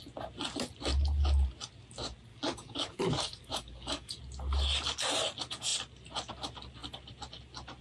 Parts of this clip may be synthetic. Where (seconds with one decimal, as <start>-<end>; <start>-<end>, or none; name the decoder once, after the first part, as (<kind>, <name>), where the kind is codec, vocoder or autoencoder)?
2.3-4.2 (codec, DAC)